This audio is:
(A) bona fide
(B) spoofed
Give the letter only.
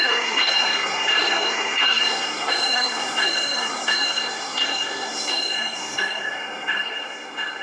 B